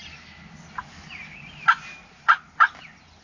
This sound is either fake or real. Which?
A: real